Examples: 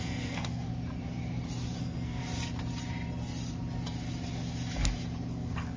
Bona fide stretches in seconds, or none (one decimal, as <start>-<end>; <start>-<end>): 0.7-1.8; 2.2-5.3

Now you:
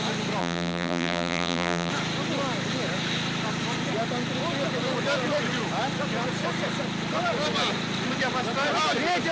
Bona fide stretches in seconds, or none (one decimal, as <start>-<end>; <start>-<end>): 0.0-0.4; 1.9-9.3

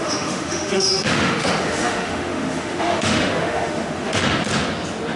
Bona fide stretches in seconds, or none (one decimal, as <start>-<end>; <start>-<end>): 4.2-5.2